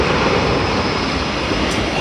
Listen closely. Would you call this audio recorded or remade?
recorded